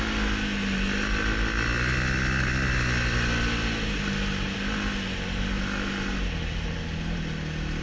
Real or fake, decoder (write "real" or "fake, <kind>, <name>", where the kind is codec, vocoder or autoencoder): real